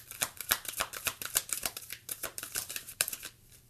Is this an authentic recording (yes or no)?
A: no